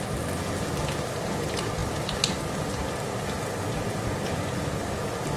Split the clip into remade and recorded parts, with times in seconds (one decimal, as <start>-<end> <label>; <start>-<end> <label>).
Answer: 0.0-5.4 recorded